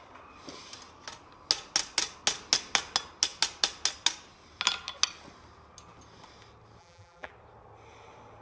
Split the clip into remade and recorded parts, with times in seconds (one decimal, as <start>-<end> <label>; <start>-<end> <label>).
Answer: 0.0-6.8 recorded; 6.8-7.3 remade; 7.3-8.4 recorded